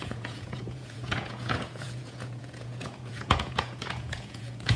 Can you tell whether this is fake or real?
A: fake